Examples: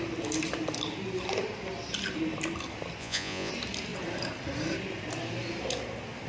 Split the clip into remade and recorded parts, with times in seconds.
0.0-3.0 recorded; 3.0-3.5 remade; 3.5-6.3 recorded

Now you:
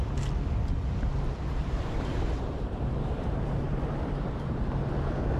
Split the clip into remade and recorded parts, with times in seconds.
0.0-1.5 recorded; 1.5-4.7 remade; 4.7-5.4 recorded

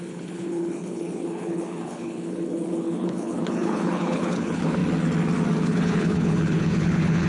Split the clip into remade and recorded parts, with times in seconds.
0.0-4.8 remade; 4.8-5.6 recorded; 5.6-7.3 remade